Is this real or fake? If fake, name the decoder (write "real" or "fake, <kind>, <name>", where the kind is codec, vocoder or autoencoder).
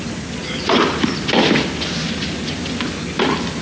real